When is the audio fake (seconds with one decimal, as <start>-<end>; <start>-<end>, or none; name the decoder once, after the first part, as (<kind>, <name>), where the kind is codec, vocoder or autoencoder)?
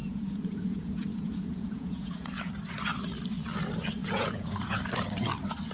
0.0-2.5 (vocoder, Vocos); 4.0-4.8